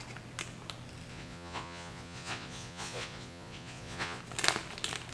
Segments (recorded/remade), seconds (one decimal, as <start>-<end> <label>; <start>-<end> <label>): 0.0-1.1 recorded; 1.1-4.2 remade; 4.2-5.1 recorded